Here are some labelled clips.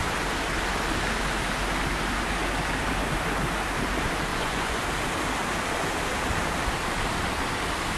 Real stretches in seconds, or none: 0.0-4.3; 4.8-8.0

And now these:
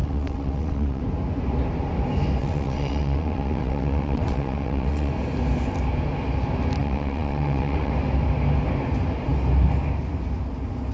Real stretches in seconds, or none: 1.0-2.4; 5.1-6.8; 7.9-10.9

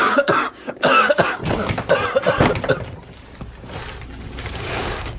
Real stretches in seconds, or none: 1.4-4.5

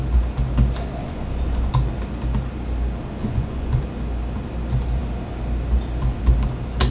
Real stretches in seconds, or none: 0.0-1.0; 1.7-3.2; 3.8-6.9

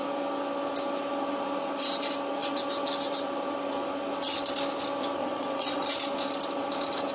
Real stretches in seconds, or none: 0.0-5.2; 5.9-7.1

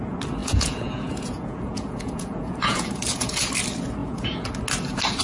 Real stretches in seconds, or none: 0.0-0.4; 3.5-4.0; 4.6-5.2

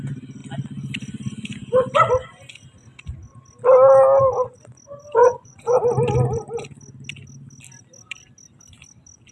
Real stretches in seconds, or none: 0.0-5.2; 5.8-9.3

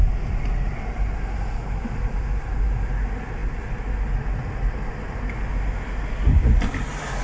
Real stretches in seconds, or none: 0.0-7.2